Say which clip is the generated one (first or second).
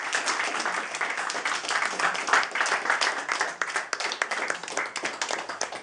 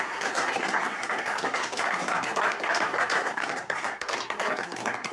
second